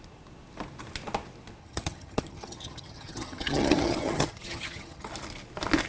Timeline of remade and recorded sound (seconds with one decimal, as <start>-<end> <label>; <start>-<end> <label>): 0.0-1.6 recorded; 1.6-5.1 remade; 5.1-5.9 recorded